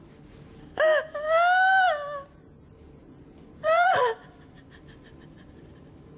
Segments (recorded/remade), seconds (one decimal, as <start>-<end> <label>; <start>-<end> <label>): 0.0-3.0 recorded; 3.0-5.7 remade; 5.7-6.2 recorded